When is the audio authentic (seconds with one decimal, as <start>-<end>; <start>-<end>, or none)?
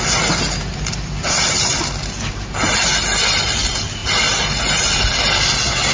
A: 0.0-5.9